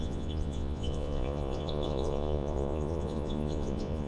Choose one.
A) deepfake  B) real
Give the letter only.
A